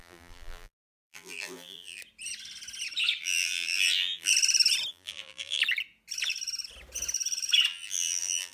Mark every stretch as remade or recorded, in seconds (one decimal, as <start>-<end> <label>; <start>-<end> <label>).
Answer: 0.0-2.0 remade; 2.0-3.2 recorded; 3.2-4.3 remade; 4.3-4.9 recorded; 4.9-5.6 remade; 5.6-7.7 recorded; 7.7-8.5 remade